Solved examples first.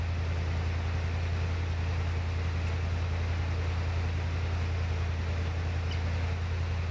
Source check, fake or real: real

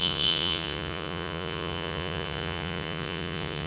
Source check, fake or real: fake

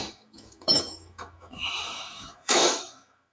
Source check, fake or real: fake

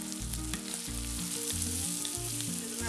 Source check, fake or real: real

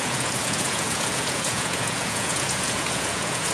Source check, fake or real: fake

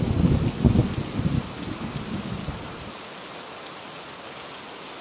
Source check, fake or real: real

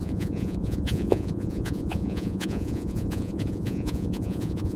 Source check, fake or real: fake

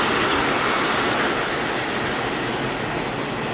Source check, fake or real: real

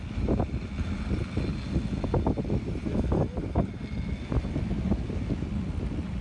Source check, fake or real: real